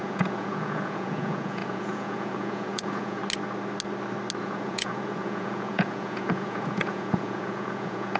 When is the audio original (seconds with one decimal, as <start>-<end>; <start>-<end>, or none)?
3.2-4.4

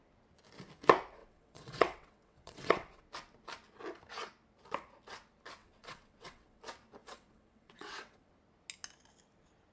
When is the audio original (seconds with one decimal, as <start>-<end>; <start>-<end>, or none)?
0.0-1.2; 3.0-5.6; 6.6-7.0; 8.3-9.7

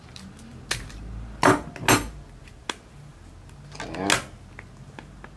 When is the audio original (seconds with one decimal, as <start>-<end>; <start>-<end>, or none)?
0.0-5.4

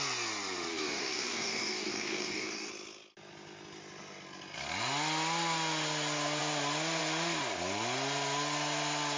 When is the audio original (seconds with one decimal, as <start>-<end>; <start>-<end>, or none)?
0.0-0.7; 2.7-9.2

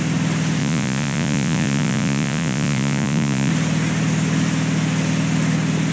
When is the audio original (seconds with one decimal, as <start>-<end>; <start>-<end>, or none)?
0.0-0.6; 3.5-5.9

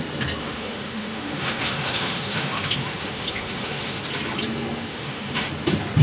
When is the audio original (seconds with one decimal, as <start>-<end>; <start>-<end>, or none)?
0.0-0.4; 4.0-4.9; 5.5-6.0